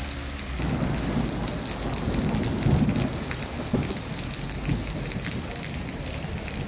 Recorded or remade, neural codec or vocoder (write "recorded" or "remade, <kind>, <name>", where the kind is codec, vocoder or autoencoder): recorded